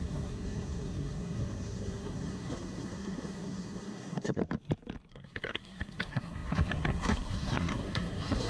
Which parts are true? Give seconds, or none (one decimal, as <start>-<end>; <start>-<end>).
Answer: 4.4-5.1